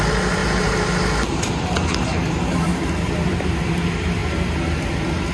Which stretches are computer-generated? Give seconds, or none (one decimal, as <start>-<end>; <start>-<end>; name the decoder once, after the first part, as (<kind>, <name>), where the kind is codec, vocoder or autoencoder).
0.4-1.4 (vocoder, BigVGAN v2); 2.7-3.6